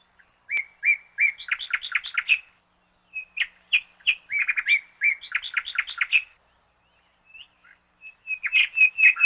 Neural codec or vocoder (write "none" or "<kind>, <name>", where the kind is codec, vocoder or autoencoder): none